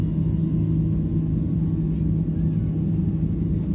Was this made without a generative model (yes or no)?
yes